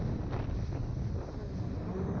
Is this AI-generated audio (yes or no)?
no